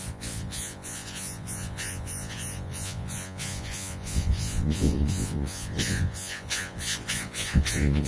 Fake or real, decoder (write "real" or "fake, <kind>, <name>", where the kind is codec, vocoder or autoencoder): fake, vocoder, Vocos